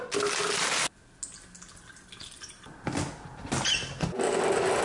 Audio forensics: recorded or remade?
recorded